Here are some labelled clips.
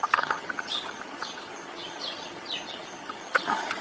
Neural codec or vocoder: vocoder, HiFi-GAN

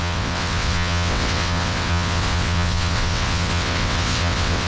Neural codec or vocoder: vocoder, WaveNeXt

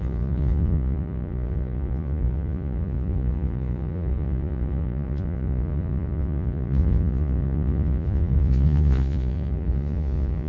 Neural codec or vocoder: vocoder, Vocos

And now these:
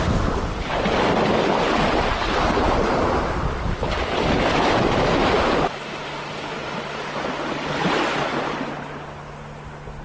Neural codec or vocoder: none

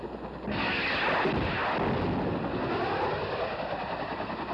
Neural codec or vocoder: none